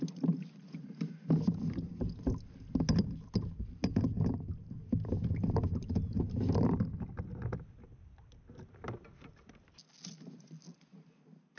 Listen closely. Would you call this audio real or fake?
real